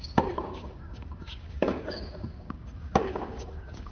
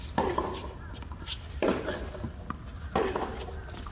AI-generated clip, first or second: first